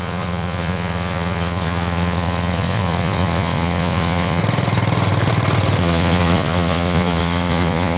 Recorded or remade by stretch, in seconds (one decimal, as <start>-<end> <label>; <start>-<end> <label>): 0.0-4.4 remade; 4.4-5.8 recorded; 5.8-8.0 remade